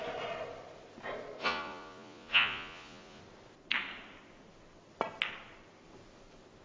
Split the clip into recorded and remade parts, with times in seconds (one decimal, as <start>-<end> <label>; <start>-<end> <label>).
0.0-1.4 recorded; 1.4-3.2 remade; 3.2-6.6 recorded